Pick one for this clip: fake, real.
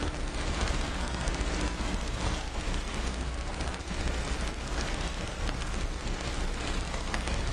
fake